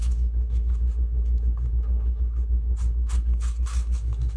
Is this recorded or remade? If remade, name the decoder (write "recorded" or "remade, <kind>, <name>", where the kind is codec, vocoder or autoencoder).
remade, codec, SNAC